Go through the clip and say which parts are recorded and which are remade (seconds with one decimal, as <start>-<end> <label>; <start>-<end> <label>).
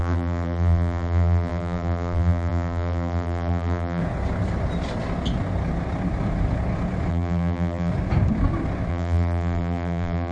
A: 0.0-4.0 remade; 4.0-7.1 recorded; 7.1-7.9 remade; 7.9-8.9 recorded; 8.9-10.3 remade